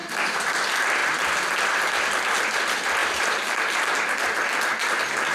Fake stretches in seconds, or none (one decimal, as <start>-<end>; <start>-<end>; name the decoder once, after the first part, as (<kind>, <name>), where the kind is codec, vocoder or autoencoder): 0.0-0.5 (vocoder, BigVGAN v2); 3.0-3.8